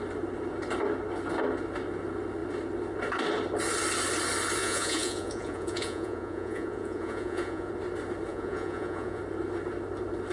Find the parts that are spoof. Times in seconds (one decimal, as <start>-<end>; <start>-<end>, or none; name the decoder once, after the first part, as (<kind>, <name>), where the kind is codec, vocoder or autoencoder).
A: 4.6-7.7 (vocoder, Vocos); 8.3-9.2